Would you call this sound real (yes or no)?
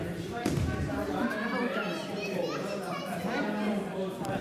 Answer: no